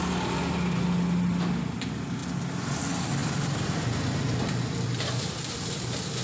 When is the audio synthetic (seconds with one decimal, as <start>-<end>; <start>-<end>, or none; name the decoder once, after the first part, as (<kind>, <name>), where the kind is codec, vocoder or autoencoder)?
2.2-2.8 (vocoder, BigVGAN v2); 3.2-5.8